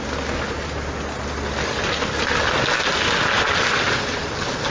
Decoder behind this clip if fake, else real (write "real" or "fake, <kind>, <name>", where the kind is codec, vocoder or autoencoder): real